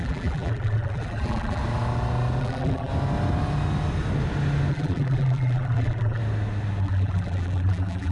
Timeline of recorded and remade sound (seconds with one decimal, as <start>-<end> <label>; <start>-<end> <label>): 0.0-1.6 remade; 1.6-2.4 recorded; 2.4-2.9 remade; 2.9-4.7 recorded; 4.7-6.2 remade; 6.2-6.8 recorded; 6.8-8.1 remade